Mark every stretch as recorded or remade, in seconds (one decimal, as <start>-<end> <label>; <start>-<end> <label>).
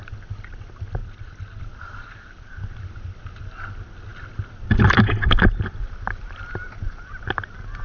0.0-7.8 recorded